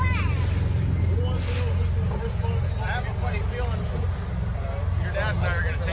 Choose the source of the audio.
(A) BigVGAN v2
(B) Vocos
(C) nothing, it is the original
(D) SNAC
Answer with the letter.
C